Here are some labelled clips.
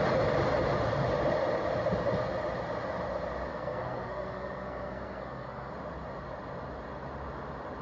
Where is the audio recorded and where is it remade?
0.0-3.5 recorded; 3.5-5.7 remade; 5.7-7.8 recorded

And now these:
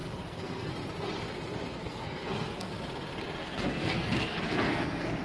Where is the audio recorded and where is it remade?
0.0-0.7 remade; 0.7-1.7 recorded; 1.7-2.7 remade; 2.7-3.4 recorded; 3.4-5.2 remade

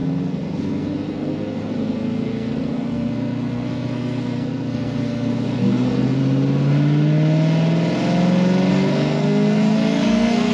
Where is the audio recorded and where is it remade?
0.0-6.2 remade; 6.2-8.7 recorded; 8.7-10.5 remade

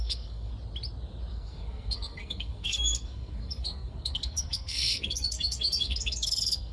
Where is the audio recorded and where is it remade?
0.0-0.5 remade; 0.5-1.3 recorded; 1.3-6.7 remade

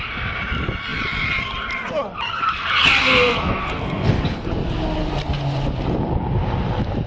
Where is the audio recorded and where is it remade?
0.0-3.0 recorded; 3.0-4.1 remade; 4.1-7.1 recorded

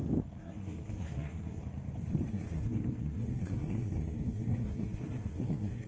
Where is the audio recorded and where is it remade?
0.0-0.4 recorded; 0.4-1.6 remade; 1.6-2.3 recorded; 2.3-5.9 remade

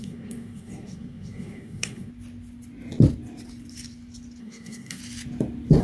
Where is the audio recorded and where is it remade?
0.0-2.1 remade; 2.1-4.4 recorded; 4.4-5.0 remade; 5.0-5.8 recorded

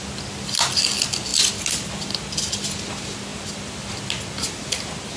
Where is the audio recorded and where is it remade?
0.0-5.2 recorded